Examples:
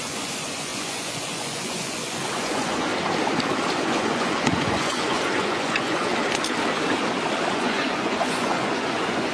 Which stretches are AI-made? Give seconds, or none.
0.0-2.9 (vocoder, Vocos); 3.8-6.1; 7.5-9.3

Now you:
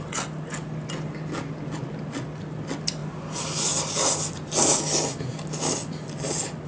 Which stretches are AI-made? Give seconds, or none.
none

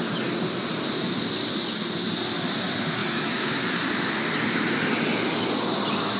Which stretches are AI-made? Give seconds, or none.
none

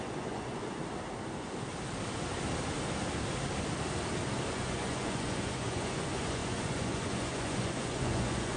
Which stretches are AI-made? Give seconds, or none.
0.0-0.8 (vocoder, Vocos); 4.5-8.6

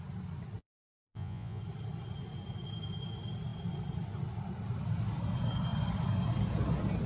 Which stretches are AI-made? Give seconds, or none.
0.6-1.6 (vocoder, Vocos)

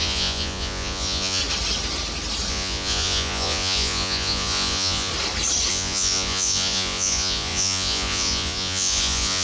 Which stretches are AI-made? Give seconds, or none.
0.0-1.4 (vocoder, Vocos); 2.5-5.1; 5.7-9.4

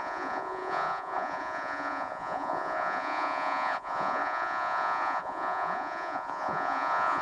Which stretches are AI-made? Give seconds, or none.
0.0-7.2 (vocoder, Vocos)